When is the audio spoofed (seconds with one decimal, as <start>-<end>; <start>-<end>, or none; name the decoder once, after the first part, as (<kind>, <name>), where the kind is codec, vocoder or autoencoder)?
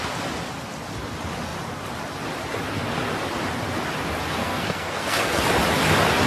4.4-5.4 (codec, SNAC)